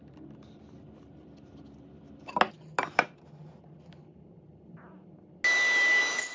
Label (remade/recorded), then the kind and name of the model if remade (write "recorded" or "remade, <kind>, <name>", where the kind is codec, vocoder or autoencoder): recorded